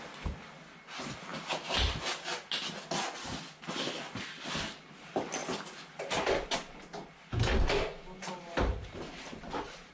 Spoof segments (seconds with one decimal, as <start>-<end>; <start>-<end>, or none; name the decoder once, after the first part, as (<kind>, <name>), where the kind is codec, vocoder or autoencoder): none